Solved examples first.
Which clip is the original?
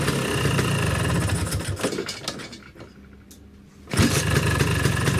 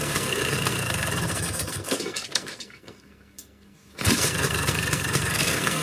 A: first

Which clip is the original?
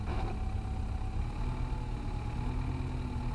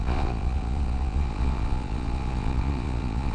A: first